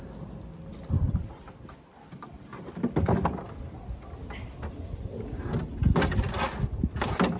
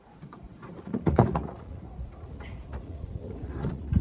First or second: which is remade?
second